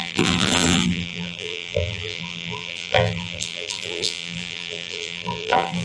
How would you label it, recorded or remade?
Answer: remade